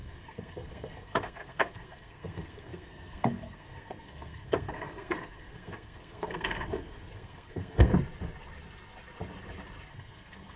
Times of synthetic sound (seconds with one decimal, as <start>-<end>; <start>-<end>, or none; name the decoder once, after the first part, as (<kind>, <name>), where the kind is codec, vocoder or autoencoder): 0.0-7.9 (codec, SNAC); 9.9-10.6

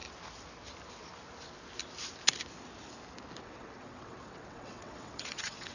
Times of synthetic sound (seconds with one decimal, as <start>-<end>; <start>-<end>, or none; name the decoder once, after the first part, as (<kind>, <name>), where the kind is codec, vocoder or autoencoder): 3.4-5.7 (vocoder, WaveNeXt)

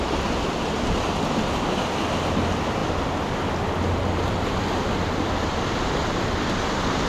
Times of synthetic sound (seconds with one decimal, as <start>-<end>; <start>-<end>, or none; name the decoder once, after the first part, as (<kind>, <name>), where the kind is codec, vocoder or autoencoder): none

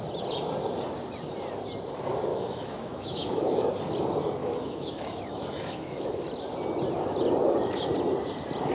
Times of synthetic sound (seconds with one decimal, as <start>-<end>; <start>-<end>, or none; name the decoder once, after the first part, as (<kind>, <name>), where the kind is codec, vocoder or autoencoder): 2.3-3.7 (autoencoder, DAC-VAE); 4.4-6.2

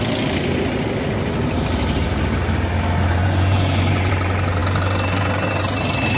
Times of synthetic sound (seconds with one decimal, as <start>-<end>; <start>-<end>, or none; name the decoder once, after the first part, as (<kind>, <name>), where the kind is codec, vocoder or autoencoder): 3.2-4.1 (vocoder, Vocos)

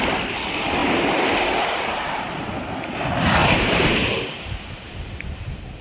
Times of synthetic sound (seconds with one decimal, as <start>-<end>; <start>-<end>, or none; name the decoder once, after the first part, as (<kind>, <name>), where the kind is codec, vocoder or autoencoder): 0.8-1.6 (vocoder, BigVGAN v2); 3.4-4.8